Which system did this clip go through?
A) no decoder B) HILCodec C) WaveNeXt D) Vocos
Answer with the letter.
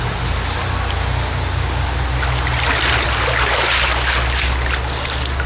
A